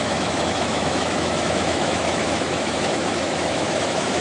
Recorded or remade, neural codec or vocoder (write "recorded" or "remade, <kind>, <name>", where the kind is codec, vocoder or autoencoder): remade, autoencoder, DAC-VAE